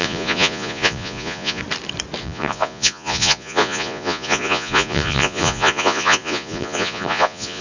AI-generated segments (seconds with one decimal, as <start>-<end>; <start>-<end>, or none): 0.0-1.6; 2.2-7.6